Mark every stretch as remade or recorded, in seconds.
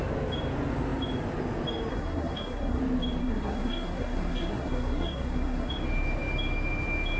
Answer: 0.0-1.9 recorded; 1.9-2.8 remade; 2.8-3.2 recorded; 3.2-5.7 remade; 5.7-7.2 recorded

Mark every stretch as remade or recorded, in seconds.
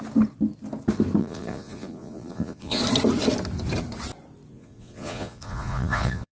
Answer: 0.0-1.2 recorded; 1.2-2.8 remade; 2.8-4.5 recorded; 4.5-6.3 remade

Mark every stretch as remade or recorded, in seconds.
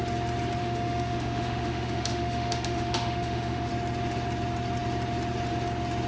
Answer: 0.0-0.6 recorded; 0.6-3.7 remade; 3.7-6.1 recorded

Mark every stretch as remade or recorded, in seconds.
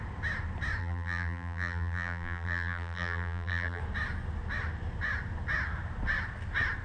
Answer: 0.0-0.8 recorded; 0.8-3.8 remade; 3.8-6.8 recorded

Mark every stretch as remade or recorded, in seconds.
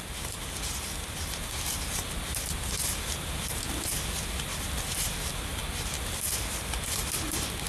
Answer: 0.0-7.7 recorded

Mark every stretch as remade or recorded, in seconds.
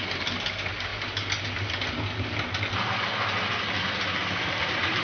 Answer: 0.0-5.0 recorded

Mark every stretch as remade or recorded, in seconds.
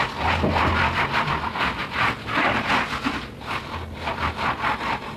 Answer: 0.0-1.8 recorded; 1.8-2.7 remade; 2.7-5.2 recorded